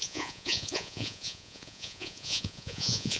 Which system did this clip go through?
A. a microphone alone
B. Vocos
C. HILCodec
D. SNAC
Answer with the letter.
B